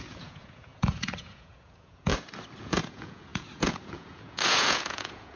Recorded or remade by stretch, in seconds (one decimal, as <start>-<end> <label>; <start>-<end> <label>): 0.0-2.1 remade; 2.1-2.6 recorded; 2.6-5.4 remade